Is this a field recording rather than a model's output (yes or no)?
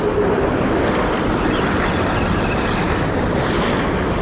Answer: yes